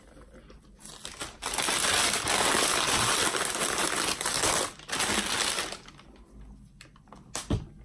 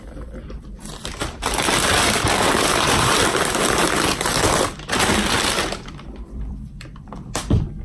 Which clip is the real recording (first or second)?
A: first